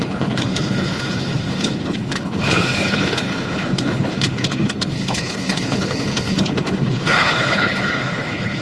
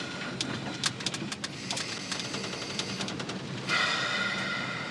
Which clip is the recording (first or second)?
second